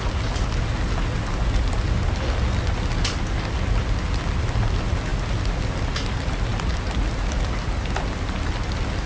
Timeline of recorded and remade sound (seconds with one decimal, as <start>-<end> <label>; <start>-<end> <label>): 0.0-9.1 recorded